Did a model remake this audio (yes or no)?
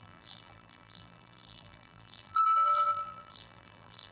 yes